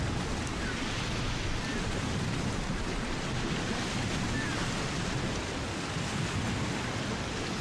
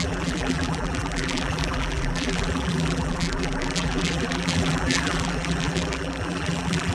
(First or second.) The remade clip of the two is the second